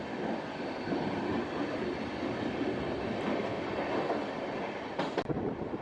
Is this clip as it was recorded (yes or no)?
yes